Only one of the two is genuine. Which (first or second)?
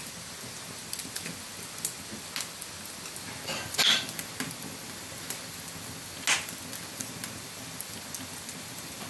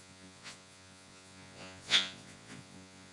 first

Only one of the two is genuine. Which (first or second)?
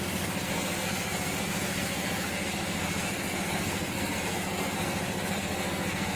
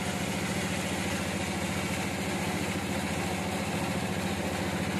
second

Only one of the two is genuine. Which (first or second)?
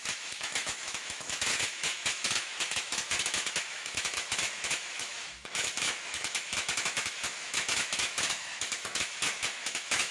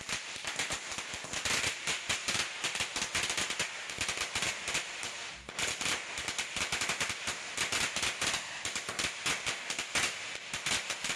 second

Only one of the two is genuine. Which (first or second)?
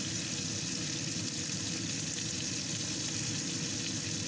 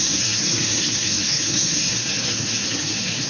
first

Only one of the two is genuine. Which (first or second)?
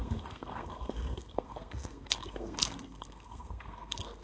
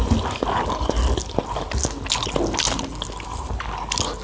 second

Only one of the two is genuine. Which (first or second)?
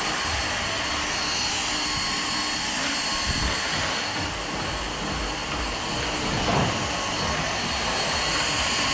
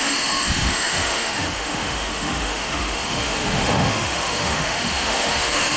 first